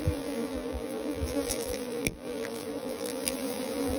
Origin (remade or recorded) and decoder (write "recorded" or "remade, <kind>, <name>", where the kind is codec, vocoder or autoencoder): remade, vocoder, BigVGAN v2